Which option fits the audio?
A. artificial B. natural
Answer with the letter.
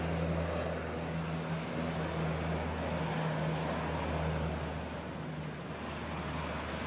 B